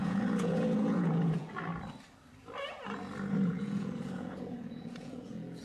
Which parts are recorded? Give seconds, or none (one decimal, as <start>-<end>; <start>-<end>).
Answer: 1.7-3.3